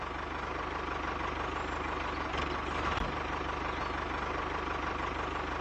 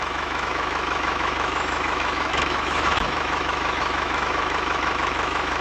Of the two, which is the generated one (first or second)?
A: second